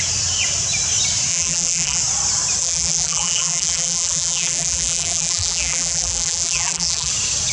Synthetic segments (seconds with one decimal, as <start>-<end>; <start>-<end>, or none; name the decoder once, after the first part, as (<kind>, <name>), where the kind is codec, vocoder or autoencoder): 1.3-2.0 (vocoder, BigVGAN v2); 2.6-7.1